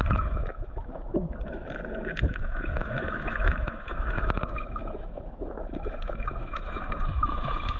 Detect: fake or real fake